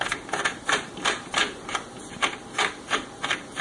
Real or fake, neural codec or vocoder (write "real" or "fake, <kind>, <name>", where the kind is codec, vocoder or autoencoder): fake, vocoder, BigVGAN v2